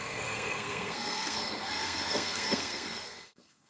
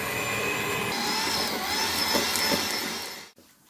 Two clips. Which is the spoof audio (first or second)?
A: first